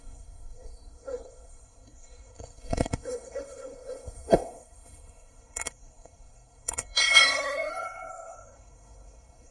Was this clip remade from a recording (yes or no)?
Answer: yes